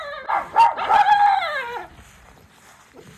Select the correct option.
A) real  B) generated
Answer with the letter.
A